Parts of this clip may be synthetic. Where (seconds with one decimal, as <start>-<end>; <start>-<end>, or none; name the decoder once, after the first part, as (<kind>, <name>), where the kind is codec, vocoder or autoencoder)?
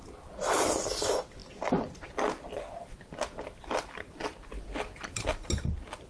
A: none